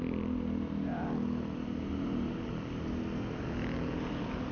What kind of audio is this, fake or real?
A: real